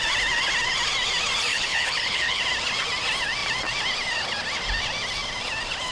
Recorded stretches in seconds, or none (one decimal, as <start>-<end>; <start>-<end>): 0.0-1.5; 2.4-5.9